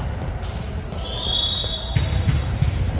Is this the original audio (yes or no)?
yes